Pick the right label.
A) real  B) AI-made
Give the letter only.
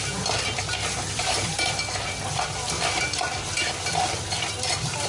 A